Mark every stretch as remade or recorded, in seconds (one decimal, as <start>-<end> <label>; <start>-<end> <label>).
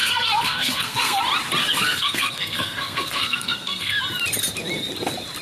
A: 0.0-1.2 remade; 1.2-1.6 recorded; 1.6-4.0 remade; 4.0-5.4 recorded